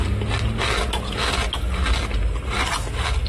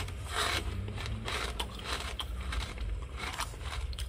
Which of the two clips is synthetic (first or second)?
second